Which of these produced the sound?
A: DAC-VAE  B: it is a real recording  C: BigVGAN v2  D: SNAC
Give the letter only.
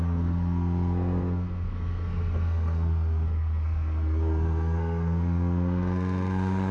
D